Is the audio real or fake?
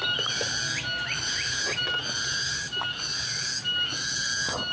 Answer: real